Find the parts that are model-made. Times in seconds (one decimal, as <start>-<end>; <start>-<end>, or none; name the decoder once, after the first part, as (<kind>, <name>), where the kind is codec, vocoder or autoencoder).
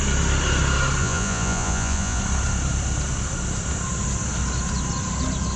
1.0-2.2 (vocoder, Vocos)